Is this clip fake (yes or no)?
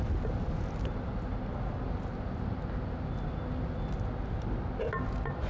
no